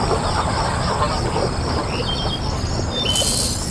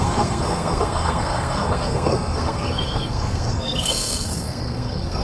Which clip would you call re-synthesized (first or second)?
second